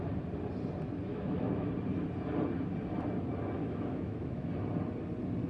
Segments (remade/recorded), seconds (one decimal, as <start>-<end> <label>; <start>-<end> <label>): 0.0-1.1 recorded; 1.1-1.7 remade; 1.7-3.6 recorded; 3.6-4.5 remade; 4.5-5.5 recorded